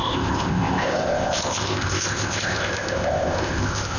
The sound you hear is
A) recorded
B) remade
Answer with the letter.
B